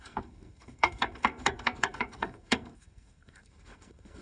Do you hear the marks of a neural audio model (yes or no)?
yes